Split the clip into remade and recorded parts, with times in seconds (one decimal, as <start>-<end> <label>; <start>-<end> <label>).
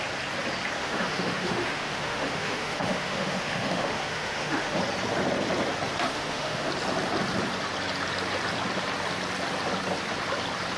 0.0-0.8 recorded; 0.8-4.8 remade; 4.8-6.1 recorded; 6.1-6.7 remade; 6.7-10.8 recorded